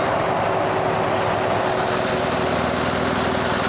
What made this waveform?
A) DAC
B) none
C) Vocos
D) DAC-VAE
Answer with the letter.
B